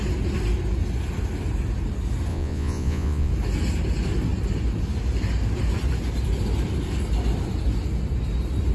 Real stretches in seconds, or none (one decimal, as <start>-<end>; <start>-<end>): 0.0-2.3; 3.3-8.7